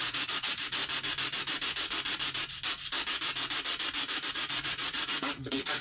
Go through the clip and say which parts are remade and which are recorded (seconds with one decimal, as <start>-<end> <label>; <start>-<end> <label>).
0.0-0.8 remade; 0.8-4.3 recorded; 4.3-5.8 remade